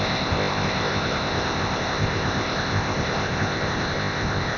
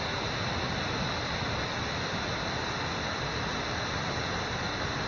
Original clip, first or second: second